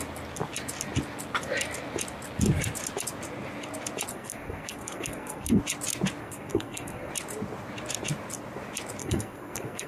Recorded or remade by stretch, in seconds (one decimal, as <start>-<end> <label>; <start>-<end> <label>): 0.0-4.1 recorded; 4.1-5.6 remade; 5.6-6.2 recorded; 6.2-7.1 remade; 7.1-9.0 recorded; 9.0-9.9 remade